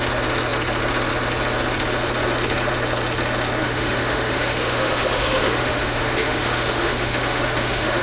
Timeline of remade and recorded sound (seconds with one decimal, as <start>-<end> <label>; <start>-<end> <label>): 0.0-3.6 recorded; 3.6-8.0 remade